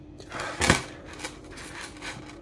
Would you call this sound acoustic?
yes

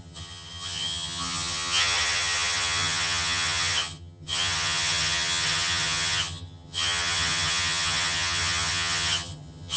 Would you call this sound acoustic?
no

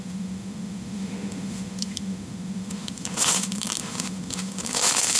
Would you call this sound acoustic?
no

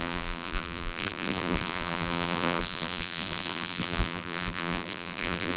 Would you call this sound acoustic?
no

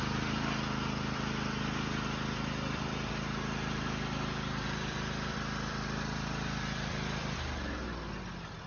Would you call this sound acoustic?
yes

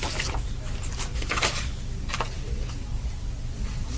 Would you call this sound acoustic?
yes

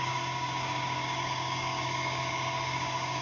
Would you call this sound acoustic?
no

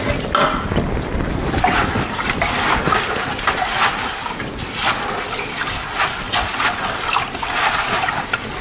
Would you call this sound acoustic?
yes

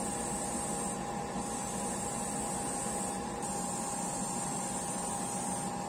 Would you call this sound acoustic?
yes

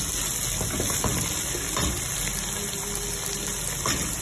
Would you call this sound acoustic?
yes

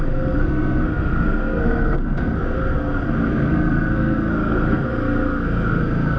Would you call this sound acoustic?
no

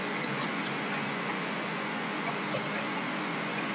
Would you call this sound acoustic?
no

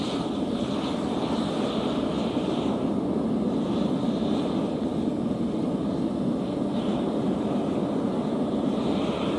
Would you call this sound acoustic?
yes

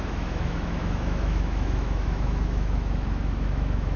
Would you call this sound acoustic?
no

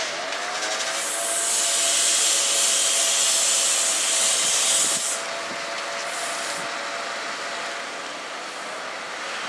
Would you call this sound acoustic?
yes